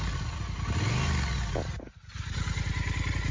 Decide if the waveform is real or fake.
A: real